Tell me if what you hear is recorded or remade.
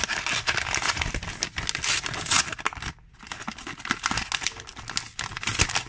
recorded